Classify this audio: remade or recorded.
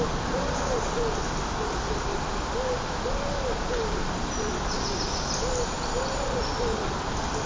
recorded